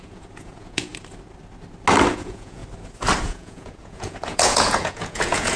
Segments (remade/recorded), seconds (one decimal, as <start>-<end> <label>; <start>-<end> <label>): 0.0-0.9 remade; 0.9-2.1 recorded; 2.1-2.6 remade; 2.6-3.2 recorded; 3.2-5.6 remade